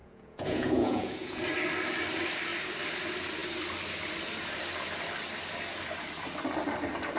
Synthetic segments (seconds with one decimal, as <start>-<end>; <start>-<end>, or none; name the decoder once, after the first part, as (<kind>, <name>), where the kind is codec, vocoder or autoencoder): 0.0-1.4 (vocoder, Vocos)